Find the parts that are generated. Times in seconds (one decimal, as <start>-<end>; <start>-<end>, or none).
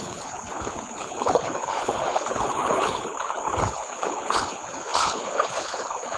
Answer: 0.0-6.2